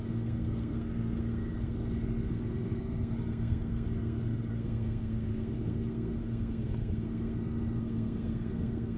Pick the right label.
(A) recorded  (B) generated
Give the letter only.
B